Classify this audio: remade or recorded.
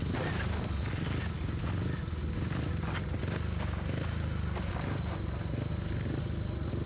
recorded